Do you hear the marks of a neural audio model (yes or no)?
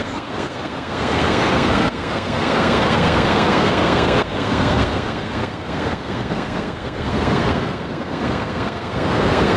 yes